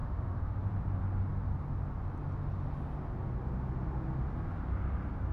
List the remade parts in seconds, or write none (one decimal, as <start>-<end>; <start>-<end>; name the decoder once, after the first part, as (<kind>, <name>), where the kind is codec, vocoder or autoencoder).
0.0-0.6 (autoencoder, DAC-VAE)